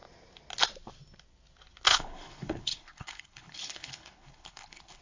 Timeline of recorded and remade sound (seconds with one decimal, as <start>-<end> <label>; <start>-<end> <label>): 0.0-1.9 recorded; 1.9-5.0 remade